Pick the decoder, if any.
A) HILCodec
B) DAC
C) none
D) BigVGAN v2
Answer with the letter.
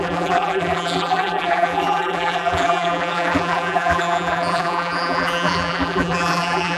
D